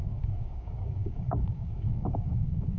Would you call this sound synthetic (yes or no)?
yes